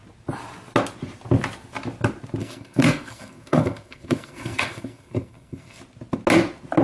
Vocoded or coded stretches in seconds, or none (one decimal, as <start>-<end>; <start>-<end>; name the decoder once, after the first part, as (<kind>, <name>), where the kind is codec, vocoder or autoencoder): 2.4-5.8 (codec, SNAC)